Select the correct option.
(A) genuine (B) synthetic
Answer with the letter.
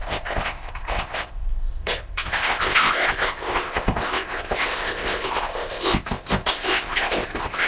B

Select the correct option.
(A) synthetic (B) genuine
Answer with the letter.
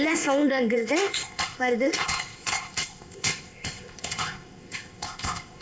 A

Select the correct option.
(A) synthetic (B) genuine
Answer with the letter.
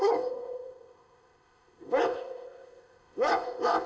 A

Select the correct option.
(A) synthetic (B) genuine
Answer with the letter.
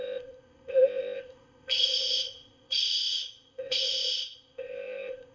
A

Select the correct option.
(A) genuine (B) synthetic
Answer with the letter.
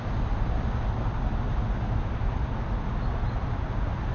A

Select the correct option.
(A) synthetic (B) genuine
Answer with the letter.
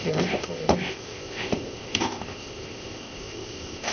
A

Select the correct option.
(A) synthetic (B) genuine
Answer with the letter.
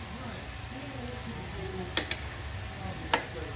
B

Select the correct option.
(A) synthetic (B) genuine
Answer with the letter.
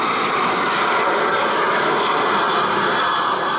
B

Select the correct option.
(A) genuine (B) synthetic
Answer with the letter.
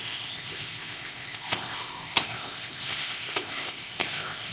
B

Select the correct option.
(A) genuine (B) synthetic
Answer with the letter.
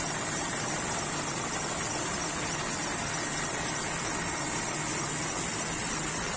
A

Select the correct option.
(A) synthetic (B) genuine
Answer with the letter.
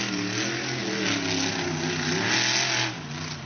B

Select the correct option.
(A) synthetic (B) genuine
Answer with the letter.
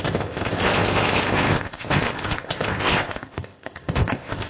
A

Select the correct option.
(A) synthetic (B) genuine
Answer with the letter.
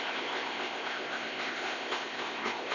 A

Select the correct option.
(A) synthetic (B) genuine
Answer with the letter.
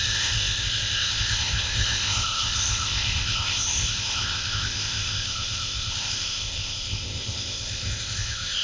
A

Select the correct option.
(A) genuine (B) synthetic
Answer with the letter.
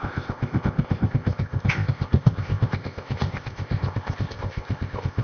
B